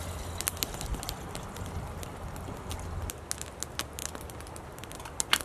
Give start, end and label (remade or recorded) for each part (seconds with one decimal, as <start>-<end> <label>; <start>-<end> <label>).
0.0-0.9 recorded; 0.9-2.7 remade; 2.7-4.0 recorded; 4.0-5.4 remade